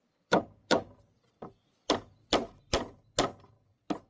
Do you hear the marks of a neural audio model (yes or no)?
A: no